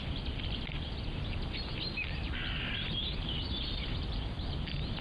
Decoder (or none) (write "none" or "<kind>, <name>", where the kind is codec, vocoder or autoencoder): none